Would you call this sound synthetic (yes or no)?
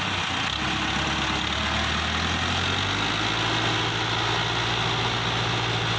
no